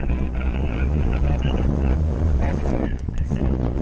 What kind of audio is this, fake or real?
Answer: fake